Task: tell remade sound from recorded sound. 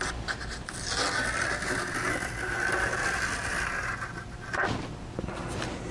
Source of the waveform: recorded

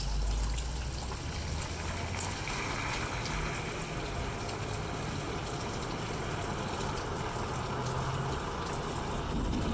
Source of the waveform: recorded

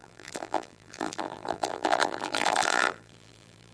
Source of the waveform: remade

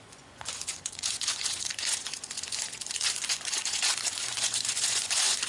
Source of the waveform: remade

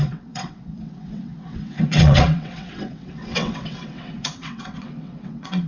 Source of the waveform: remade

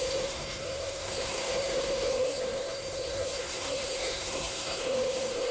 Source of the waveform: remade